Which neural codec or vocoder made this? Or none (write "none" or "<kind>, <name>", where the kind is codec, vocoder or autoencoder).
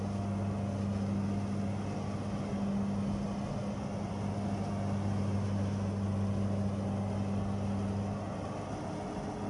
none